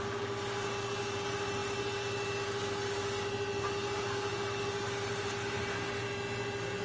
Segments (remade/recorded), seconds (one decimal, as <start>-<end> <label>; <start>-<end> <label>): 0.0-6.8 recorded